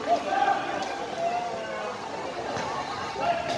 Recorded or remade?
recorded